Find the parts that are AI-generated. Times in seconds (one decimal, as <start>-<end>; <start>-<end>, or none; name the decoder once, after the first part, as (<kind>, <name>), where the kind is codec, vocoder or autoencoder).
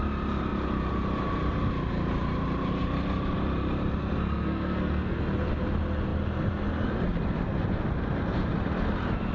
4.0-5.2 (codec, SNAC)